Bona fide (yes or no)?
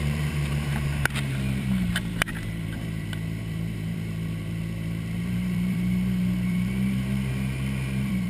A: no